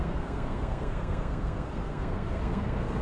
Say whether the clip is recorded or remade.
remade